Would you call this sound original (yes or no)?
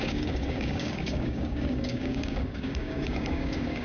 no